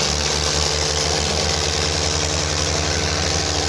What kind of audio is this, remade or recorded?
recorded